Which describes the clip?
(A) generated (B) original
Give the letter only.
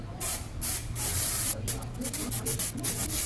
B